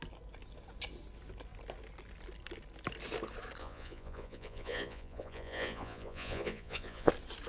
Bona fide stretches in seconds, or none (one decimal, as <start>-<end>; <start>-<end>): 0.0-3.6; 7.1-7.5